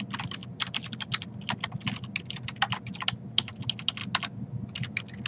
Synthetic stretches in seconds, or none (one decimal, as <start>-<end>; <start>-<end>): none